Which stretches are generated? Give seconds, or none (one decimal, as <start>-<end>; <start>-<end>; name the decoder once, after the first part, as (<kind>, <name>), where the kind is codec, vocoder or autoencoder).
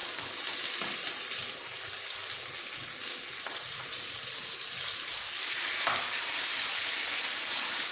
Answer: none